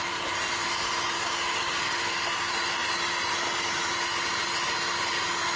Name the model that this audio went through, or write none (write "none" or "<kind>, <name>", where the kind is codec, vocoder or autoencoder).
none